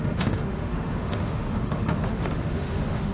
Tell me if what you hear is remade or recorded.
remade